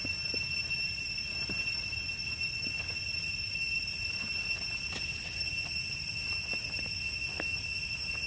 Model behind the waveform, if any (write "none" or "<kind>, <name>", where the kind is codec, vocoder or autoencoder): none